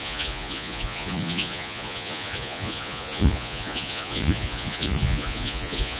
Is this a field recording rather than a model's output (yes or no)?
no